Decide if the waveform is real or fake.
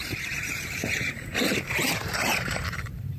fake